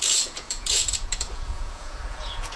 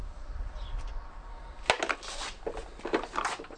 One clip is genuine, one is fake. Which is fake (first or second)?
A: first